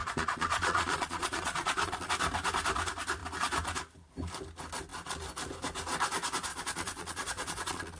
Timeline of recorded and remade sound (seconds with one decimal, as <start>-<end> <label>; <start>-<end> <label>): 0.0-2.1 remade; 2.1-6.5 recorded; 6.5-8.0 remade